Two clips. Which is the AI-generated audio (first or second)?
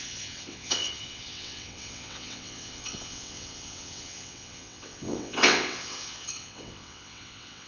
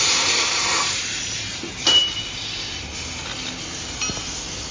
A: first